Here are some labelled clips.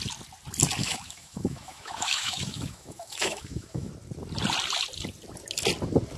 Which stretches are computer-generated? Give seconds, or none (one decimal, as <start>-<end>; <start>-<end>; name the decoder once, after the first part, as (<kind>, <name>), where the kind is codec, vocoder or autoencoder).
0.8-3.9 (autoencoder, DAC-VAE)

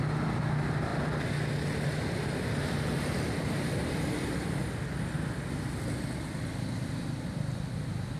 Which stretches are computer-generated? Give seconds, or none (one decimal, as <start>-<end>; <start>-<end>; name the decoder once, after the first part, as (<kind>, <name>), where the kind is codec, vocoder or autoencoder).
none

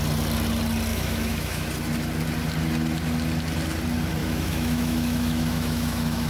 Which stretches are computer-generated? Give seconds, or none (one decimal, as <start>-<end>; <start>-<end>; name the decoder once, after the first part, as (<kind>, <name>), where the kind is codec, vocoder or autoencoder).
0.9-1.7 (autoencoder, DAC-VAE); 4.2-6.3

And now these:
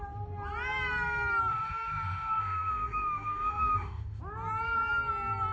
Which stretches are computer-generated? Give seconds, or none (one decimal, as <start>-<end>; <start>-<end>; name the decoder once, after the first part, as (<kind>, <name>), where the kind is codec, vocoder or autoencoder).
1.5-4.2 (autoencoder, DAC-VAE)

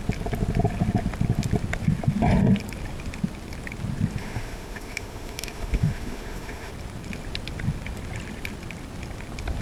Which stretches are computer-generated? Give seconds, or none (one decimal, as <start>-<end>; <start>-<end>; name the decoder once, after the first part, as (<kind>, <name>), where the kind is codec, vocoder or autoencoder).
4.2-6.7 (autoencoder, DAC-VAE)